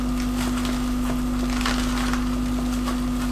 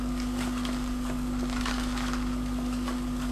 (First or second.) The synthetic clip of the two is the second